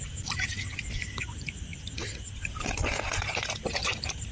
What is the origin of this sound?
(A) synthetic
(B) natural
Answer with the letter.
B